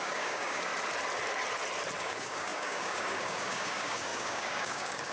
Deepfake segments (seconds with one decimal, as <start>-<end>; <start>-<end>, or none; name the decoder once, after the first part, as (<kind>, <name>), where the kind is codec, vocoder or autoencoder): 0.0-0.7 (codec, DAC); 2.0-5.1